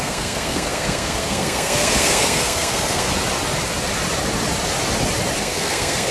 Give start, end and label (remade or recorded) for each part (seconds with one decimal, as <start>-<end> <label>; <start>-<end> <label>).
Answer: 0.0-3.1 remade; 3.1-5.4 recorded; 5.4-6.1 remade